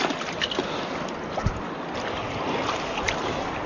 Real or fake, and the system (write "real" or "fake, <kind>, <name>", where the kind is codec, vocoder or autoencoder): real